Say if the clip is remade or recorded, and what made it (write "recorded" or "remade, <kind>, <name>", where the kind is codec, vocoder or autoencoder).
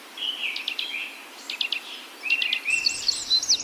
recorded